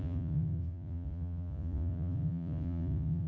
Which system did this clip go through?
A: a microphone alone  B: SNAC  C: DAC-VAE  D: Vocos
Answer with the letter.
D